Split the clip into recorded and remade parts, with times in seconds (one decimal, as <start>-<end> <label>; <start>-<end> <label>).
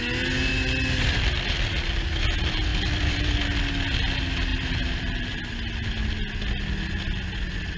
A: 0.0-2.7 recorded; 2.7-3.4 remade; 3.4-4.5 recorded; 4.5-5.5 remade; 5.5-7.8 recorded